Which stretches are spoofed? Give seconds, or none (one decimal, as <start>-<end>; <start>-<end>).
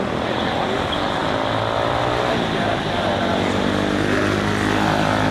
none